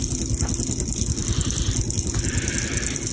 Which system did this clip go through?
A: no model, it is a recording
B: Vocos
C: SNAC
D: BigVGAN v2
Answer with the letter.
A